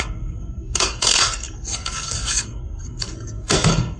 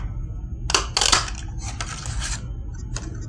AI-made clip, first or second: first